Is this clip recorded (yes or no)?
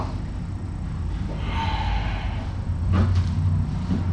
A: yes